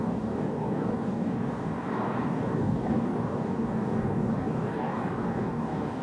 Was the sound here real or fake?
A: fake